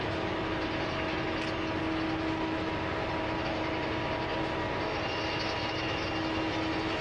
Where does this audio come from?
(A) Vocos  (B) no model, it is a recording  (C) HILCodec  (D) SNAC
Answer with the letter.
B